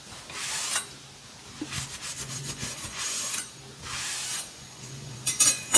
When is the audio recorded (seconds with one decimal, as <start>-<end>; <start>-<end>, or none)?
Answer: 0.0-2.1; 3.6-4.3

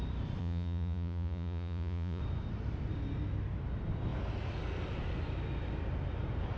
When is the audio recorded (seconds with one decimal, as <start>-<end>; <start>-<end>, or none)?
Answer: 0.0-0.4; 2.2-6.6

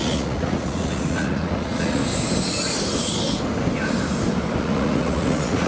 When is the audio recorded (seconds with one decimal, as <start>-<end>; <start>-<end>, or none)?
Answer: 2.0-4.6

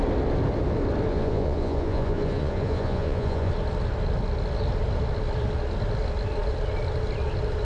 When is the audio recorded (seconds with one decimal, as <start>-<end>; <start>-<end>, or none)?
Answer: 0.0-1.1; 3.5-7.6

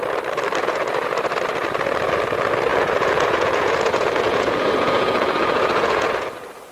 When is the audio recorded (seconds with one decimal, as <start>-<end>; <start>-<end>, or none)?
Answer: 0.0-0.6; 1.2-2.7; 6.3-6.7

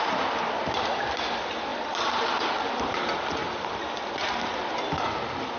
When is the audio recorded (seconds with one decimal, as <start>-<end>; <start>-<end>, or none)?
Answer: 0.0-5.6

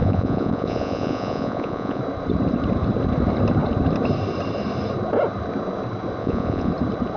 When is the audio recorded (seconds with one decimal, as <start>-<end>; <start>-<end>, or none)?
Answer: 2.0-6.2; 6.7-7.2